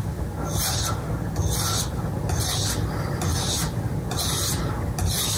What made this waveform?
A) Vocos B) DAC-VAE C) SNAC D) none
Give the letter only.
D